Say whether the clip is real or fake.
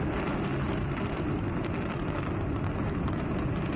real